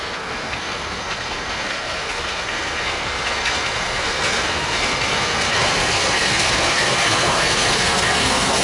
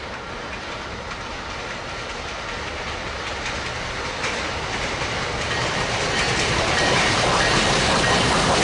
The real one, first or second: second